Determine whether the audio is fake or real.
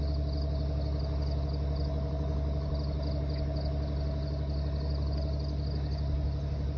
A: real